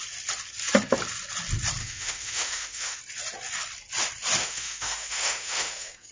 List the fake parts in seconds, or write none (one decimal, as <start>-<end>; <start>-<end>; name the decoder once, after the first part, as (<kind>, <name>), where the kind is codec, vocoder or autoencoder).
1.8-3.0 (autoencoder, DAC-VAE); 4.4-6.1